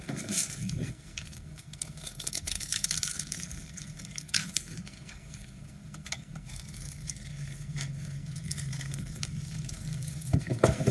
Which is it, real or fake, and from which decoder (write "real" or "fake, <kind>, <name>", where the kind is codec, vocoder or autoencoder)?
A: fake, codec, SNAC